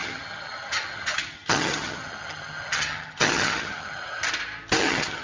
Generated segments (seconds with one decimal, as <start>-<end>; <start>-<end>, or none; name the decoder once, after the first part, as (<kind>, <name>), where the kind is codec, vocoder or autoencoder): 0.0-4.2 (vocoder, HiFi-GAN); 4.8-5.2